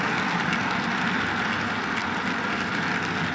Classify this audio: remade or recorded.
recorded